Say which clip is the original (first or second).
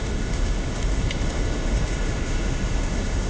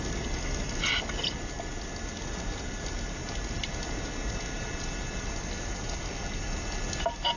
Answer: second